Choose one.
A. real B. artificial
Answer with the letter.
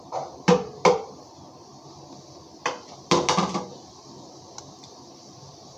A